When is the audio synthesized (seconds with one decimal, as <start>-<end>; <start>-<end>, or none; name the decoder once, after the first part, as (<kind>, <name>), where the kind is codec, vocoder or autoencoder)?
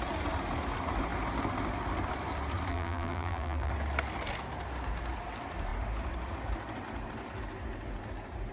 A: 2.7-3.7 (vocoder, BigVGAN v2)